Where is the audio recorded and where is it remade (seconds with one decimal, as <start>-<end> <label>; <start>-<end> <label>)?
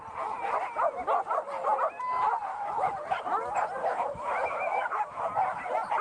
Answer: 0.0-2.5 recorded; 2.5-3.0 remade; 3.0-3.8 recorded; 3.8-5.2 remade; 5.2-6.0 recorded